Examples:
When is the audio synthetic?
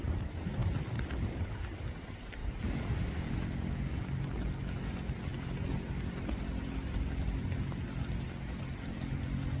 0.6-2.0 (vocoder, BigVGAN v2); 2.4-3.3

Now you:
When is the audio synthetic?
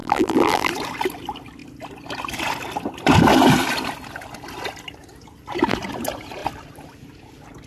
0.0-0.7 (vocoder, BigVGAN v2)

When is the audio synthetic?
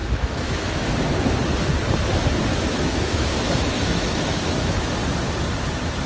0.0-0.8 (autoencoder, DAC-VAE); 2.5-5.0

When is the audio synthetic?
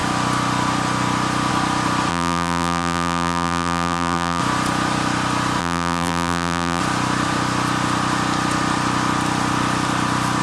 2.1-4.4 (vocoder, BigVGAN v2); 5.6-6.8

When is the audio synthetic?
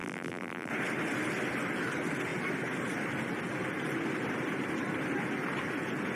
0.0-0.7 (vocoder, BigVGAN v2)